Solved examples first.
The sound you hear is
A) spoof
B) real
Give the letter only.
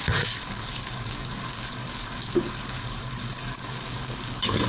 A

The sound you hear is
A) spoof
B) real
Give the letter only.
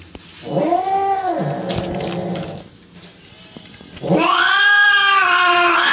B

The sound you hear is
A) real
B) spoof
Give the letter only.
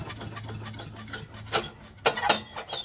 A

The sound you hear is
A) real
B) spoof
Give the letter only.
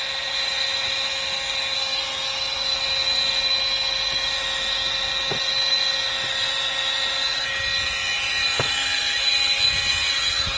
A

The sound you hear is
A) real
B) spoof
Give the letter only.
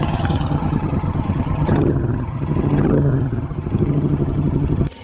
B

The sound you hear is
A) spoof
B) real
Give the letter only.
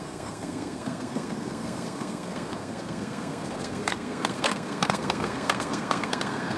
A